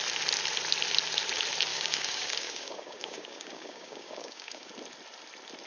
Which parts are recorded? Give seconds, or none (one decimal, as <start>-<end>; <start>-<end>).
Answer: 0.0-1.7; 4.7-5.7